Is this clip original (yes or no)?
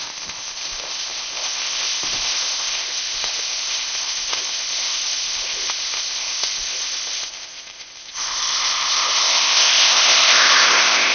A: no